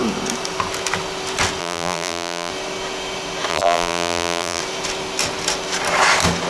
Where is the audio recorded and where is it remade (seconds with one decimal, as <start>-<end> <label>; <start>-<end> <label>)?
0.0-1.6 recorded; 1.6-2.5 remade; 2.5-3.5 recorded; 3.5-4.6 remade; 4.6-6.5 recorded